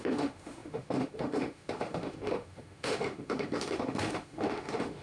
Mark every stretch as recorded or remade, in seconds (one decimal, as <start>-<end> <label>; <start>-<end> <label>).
0.0-5.0 remade